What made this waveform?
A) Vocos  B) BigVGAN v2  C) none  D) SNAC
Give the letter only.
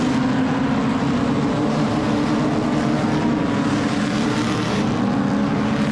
C